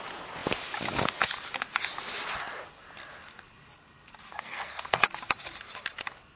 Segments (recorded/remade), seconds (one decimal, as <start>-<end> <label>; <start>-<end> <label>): 0.0-4.3 recorded; 4.3-5.0 remade; 5.0-6.4 recorded